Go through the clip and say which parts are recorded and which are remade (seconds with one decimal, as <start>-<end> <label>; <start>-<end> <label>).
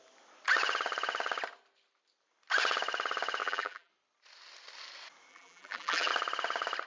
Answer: 0.0-3.4 recorded; 3.4-3.9 remade; 3.9-5.3 recorded; 5.3-6.1 remade; 6.1-6.9 recorded